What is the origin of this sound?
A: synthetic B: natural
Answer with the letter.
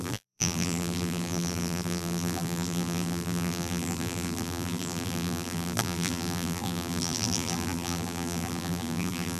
A